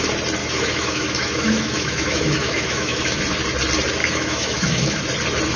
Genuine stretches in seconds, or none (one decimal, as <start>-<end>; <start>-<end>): 0.0-0.4; 3.2-4.0; 5.0-5.6